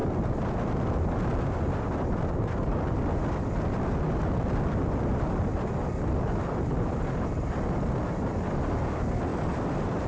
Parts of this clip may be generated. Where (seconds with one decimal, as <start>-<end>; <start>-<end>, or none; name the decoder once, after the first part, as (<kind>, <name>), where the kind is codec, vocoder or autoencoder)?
0.0-0.6 (vocoder, BigVGAN v2); 9.3-10.1